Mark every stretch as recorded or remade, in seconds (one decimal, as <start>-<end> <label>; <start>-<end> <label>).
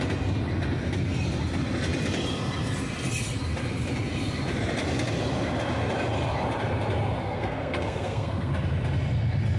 0.0-7.2 recorded; 7.2-8.5 remade; 8.5-9.6 recorded